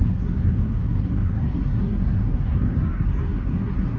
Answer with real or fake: fake